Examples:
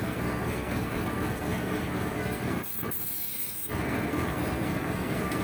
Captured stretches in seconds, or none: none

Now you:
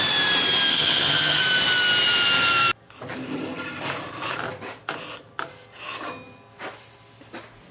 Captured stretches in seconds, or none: 0.0-0.7; 1.4-7.7

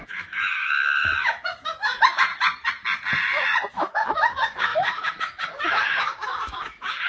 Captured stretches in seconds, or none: 2.3-3.7

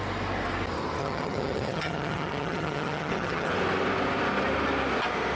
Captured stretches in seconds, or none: 0.0-1.0; 3.5-5.3

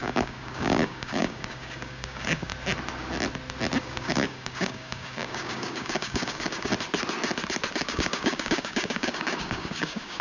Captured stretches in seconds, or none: 2.5-3.8; 6.7-7.8

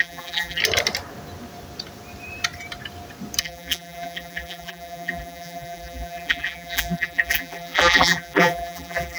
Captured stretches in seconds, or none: 0.6-3.4